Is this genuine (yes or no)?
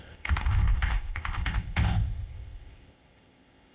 no